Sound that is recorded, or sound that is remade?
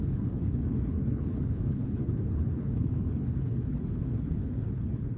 remade